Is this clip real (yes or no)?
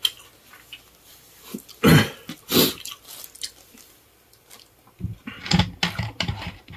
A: yes